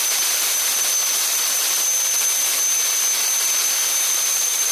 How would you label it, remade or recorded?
remade